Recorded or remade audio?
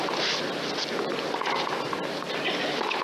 recorded